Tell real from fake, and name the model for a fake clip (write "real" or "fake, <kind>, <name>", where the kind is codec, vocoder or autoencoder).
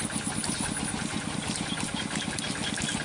real